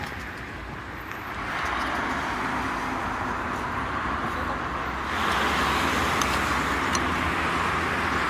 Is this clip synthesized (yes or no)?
no